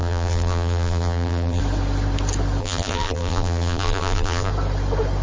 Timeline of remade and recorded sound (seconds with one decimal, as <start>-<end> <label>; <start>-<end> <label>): 0.0-1.6 remade; 1.6-2.6 recorded; 2.6-4.5 remade; 4.5-5.2 recorded